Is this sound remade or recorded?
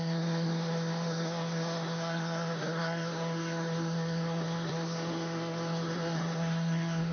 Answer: remade